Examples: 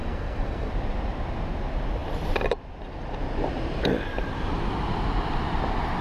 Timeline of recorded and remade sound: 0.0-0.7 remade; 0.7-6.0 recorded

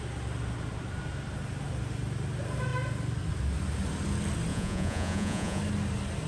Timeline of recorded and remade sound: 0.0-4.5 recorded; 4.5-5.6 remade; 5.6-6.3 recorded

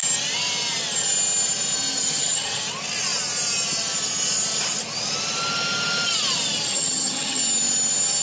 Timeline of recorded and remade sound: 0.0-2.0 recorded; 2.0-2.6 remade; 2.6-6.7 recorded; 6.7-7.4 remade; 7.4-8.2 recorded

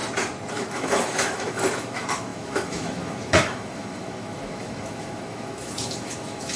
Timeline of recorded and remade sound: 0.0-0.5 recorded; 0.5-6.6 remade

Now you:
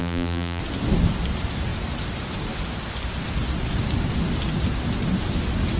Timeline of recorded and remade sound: 0.0-0.6 remade; 0.6-5.8 recorded

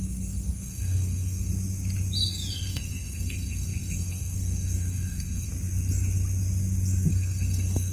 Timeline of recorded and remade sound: 0.0-1.5 remade; 1.5-2.5 recorded; 2.5-5.5 remade; 5.5-7.1 recorded; 7.1-7.9 remade

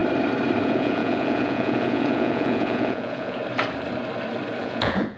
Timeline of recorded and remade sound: 0.0-0.6 recorded; 0.6-3.4 remade; 3.4-4.6 recorded; 4.6-5.2 remade